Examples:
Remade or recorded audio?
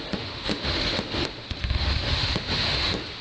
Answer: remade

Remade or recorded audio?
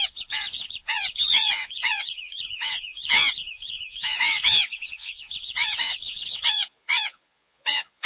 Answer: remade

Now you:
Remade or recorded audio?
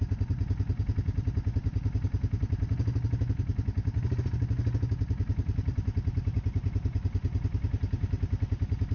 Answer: recorded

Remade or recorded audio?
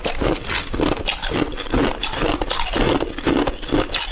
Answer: recorded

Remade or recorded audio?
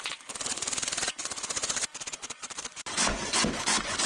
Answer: remade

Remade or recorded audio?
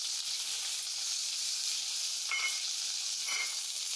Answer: remade